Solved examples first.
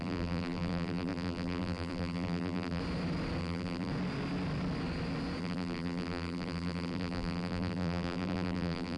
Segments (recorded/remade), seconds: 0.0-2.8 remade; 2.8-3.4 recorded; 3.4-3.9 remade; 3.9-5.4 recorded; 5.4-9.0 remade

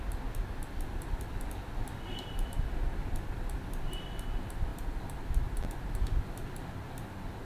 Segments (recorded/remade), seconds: 0.0-4.7 recorded; 4.7-6.2 remade; 6.2-7.4 recorded